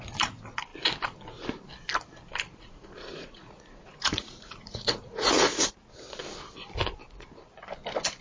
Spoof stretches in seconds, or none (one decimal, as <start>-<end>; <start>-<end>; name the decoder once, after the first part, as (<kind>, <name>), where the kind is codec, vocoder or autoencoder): 2.5-5.7 (vocoder, Vocos)